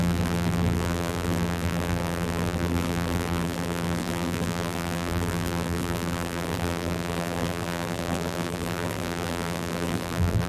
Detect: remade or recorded remade